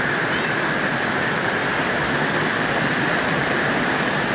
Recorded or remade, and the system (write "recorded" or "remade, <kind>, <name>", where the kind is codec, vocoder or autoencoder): recorded